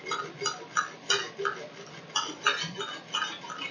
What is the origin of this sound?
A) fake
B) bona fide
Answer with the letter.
B